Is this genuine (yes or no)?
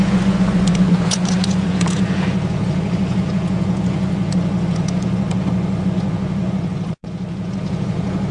no